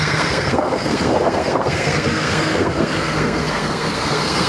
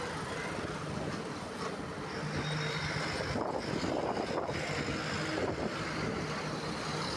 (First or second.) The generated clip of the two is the first